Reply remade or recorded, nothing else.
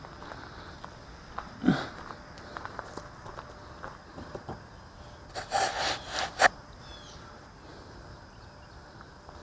recorded